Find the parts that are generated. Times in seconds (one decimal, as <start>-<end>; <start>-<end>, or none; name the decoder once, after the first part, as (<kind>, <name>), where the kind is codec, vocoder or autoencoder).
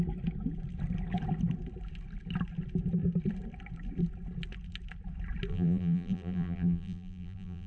5.5-7.7 (vocoder, BigVGAN v2)